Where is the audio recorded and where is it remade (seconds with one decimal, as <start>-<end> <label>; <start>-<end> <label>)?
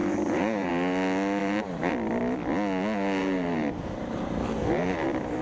0.0-0.7 remade; 0.7-1.4 recorded; 1.4-1.9 remade; 1.9-3.2 recorded; 3.2-5.4 remade